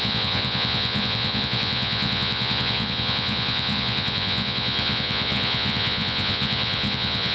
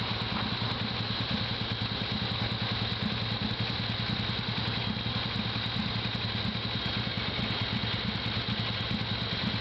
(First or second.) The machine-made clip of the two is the first